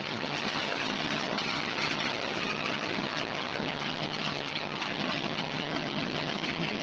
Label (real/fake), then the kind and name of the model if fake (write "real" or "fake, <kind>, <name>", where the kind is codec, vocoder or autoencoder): fake, vocoder, HiFi-GAN